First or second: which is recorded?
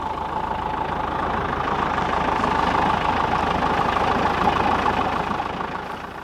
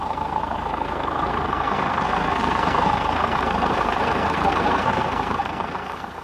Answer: first